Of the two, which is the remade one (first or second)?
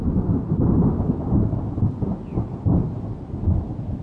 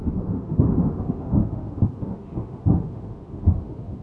second